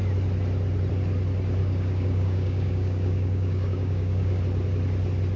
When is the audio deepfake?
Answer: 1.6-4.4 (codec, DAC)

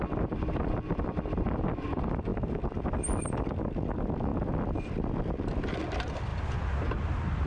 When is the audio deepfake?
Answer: 0.0-6.3 (vocoder, BigVGAN v2)